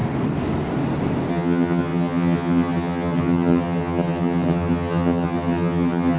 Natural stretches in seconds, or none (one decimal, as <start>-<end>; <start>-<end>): 0.0-1.3

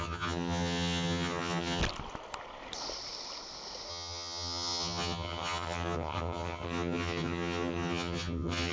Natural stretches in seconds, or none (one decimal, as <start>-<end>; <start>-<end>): 1.8-3.9